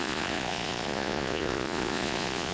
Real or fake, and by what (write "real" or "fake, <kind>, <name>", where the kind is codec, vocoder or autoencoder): fake, vocoder, Vocos